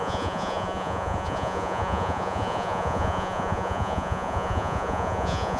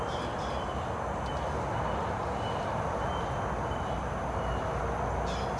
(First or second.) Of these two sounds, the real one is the second